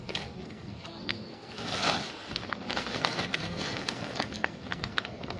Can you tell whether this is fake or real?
fake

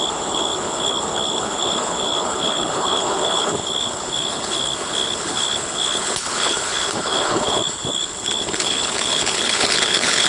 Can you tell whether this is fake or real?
fake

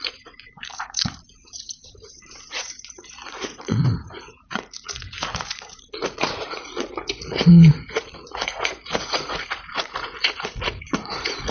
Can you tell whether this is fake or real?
fake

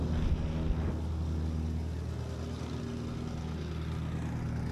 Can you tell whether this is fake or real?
real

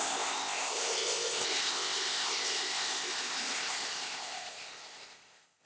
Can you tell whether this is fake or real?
fake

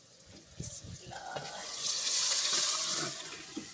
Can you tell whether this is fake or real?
fake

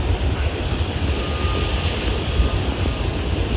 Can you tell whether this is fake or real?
real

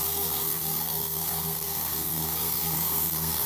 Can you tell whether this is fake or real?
fake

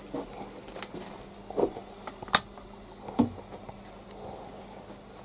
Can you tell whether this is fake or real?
real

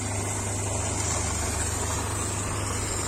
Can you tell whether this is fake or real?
real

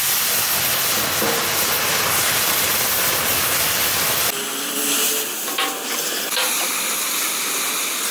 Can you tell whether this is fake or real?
real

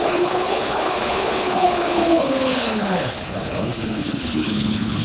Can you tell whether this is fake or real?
fake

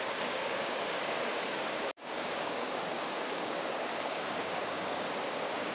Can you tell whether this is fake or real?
fake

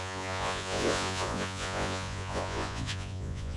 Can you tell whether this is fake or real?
fake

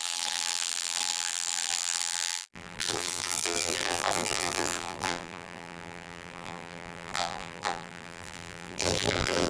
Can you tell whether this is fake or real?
fake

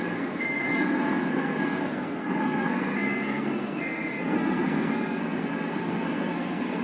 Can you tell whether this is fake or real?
fake